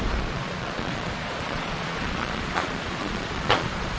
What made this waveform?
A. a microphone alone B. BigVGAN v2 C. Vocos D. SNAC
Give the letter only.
C